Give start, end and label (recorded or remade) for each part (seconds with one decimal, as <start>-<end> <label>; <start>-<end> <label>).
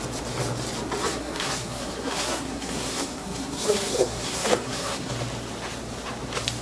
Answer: 0.0-1.1 recorded; 1.1-5.1 remade; 5.1-6.6 recorded